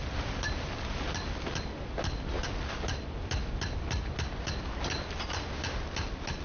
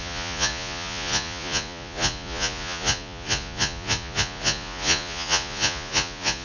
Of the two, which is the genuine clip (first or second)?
first